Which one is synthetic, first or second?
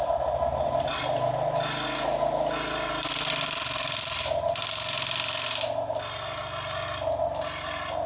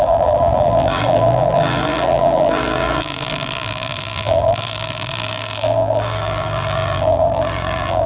second